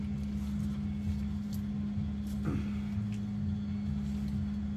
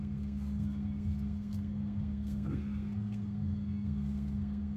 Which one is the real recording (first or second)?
first